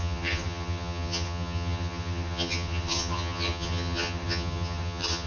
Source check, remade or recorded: remade